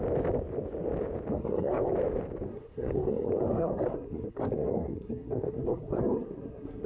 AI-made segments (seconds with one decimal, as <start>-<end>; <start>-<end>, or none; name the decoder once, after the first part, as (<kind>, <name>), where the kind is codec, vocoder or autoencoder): 1.4-1.9 (codec, SNAC); 2.5-6.9